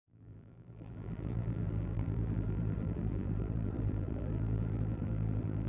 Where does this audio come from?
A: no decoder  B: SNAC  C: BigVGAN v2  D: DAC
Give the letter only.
C